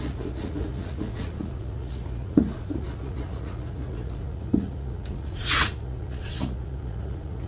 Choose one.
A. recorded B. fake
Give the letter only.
B